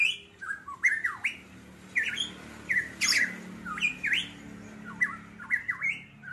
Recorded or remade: recorded